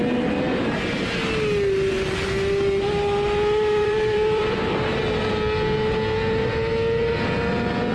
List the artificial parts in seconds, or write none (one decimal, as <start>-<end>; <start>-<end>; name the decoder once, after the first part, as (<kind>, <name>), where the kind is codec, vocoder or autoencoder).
3.8-4.4 (vocoder, BigVGAN v2)